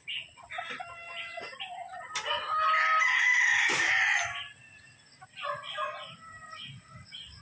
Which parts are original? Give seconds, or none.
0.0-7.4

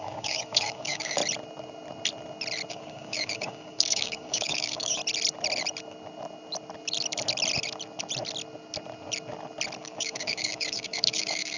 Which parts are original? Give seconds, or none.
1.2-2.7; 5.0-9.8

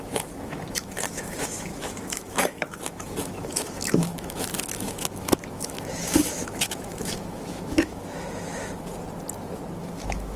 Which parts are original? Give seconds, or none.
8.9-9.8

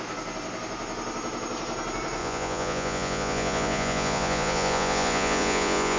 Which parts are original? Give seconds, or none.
0.0-2.2